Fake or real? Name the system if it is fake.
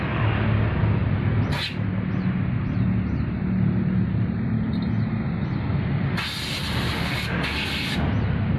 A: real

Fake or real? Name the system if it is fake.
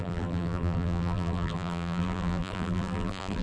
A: fake, vocoder, BigVGAN v2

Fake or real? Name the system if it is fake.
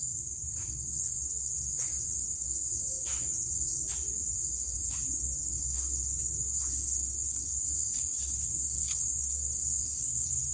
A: fake, codec, DAC